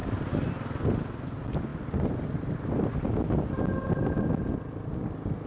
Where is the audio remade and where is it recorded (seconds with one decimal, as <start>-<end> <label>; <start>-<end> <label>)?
0.0-1.0 remade; 1.0-1.7 recorded; 1.7-3.6 remade; 3.6-5.5 recorded